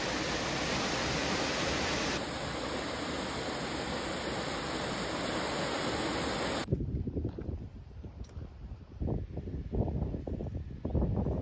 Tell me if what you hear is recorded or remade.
recorded